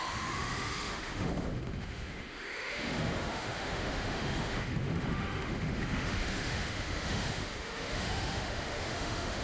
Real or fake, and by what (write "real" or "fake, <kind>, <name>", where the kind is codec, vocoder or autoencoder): fake, autoencoder, DAC-VAE